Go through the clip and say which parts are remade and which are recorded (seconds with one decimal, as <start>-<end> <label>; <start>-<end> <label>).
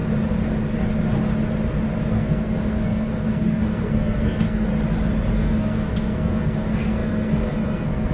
0.0-2.1 recorded; 2.1-4.7 remade; 4.7-5.3 recorded; 5.3-8.1 remade